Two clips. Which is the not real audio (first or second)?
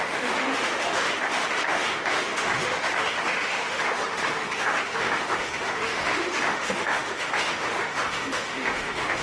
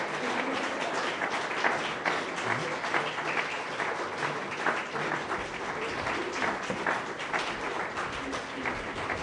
first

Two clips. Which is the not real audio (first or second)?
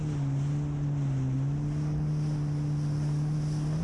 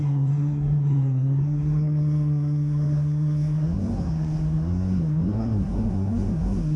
second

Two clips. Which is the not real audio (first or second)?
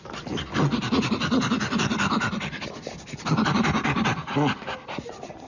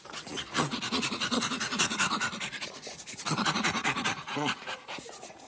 second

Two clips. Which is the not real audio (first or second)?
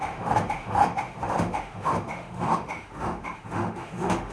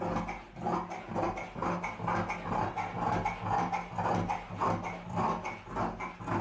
first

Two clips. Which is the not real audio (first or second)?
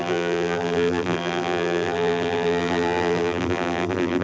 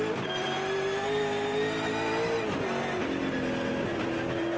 first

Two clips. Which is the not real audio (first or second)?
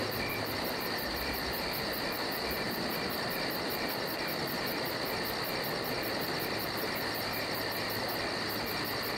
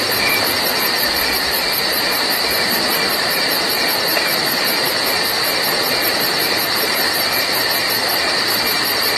second